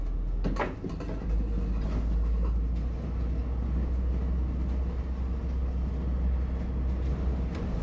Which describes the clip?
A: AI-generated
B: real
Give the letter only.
B